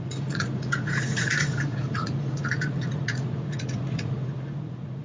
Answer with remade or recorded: remade